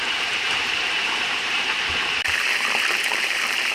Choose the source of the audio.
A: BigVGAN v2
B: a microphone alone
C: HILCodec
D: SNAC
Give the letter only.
A